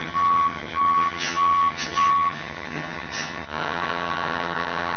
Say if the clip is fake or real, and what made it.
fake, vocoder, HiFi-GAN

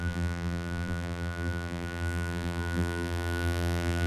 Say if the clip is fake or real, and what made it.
fake, vocoder, BigVGAN v2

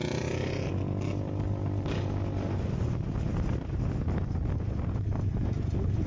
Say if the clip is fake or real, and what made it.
real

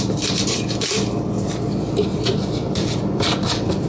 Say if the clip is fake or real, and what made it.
fake, vocoder, BigVGAN v2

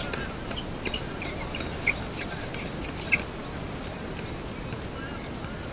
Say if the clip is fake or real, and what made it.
real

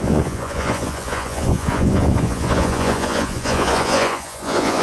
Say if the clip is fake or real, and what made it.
fake, vocoder, Vocos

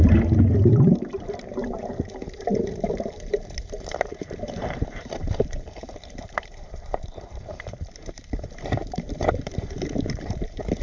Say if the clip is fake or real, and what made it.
fake, vocoder, BigVGAN v2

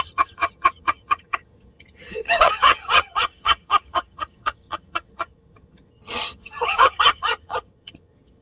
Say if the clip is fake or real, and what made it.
fake, vocoder, HiFi-GAN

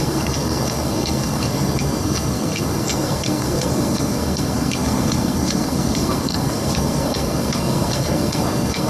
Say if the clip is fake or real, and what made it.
fake, codec, SNAC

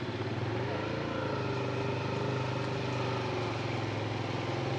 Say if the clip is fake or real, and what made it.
real